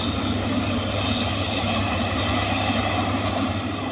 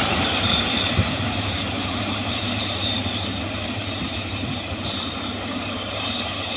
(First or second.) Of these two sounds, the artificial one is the second